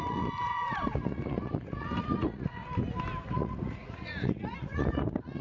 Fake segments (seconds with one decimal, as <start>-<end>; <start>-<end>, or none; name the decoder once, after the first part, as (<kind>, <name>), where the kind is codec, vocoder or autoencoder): 0.0-2.6 (vocoder, Vocos); 3.3-5.4